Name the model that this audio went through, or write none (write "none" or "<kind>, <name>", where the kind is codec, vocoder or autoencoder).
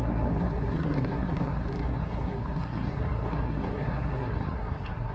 codec, SNAC